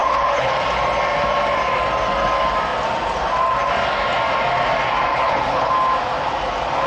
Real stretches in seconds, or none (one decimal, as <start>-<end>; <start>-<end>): 0.5-5.1; 5.7-6.9